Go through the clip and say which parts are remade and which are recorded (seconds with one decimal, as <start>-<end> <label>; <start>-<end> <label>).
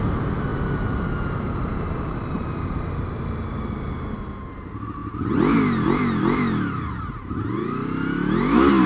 0.0-8.9 recorded